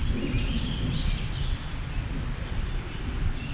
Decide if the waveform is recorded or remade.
recorded